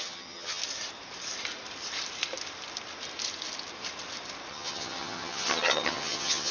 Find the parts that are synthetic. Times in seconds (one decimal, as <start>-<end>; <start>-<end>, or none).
0.0-0.6; 4.5-6.5